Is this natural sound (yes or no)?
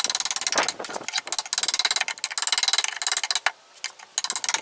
yes